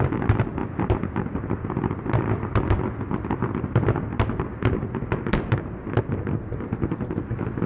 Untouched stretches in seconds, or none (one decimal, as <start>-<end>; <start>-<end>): none